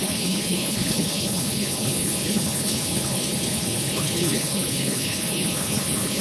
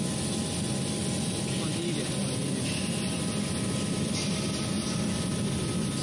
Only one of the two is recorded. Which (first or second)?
second